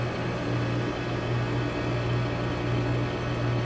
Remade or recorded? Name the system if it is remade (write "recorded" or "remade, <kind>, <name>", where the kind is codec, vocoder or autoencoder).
recorded